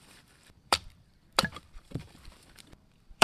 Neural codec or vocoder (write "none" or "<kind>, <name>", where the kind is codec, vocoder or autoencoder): vocoder, BigVGAN v2